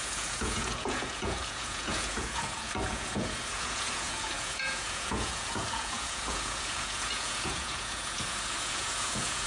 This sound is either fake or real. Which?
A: fake